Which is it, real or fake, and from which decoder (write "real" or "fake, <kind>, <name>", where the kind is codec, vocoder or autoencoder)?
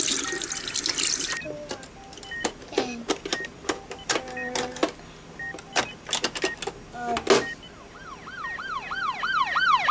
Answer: real